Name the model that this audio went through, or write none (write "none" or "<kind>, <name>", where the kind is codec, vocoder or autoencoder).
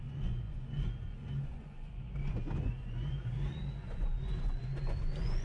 vocoder, Vocos